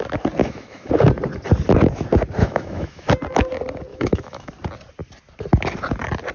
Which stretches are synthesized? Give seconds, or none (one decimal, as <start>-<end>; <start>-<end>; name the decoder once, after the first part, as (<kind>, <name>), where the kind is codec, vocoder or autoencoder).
0.4-0.9 (autoencoder, DAC-VAE); 2.4-3.1; 3.9-4.5